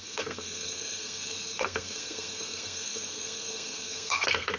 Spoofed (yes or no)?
yes